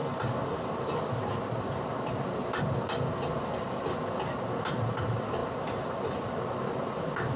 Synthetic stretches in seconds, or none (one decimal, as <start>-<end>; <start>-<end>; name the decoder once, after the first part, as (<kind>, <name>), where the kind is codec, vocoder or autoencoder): 0.0-4.4 (vocoder, BigVGAN v2); 5.4-6.4